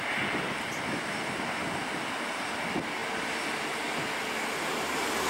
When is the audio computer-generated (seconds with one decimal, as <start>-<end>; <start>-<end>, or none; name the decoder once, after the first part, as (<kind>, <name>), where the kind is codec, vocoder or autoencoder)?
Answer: none